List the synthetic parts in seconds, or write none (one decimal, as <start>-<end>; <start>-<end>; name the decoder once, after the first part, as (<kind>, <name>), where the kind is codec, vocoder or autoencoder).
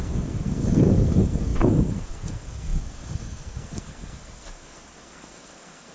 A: 0.0-5.9 (codec, SNAC)